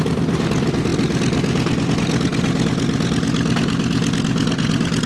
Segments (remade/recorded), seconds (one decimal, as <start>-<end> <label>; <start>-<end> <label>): 0.0-5.1 recorded